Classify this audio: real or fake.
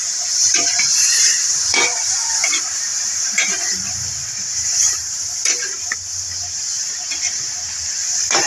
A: fake